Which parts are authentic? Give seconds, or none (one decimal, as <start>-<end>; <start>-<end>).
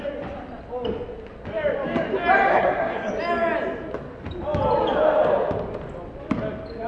0.0-2.5; 3.1-6.9